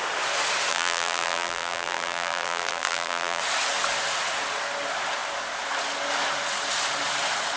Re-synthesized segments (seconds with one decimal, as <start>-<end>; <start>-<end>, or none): 0.7-3.4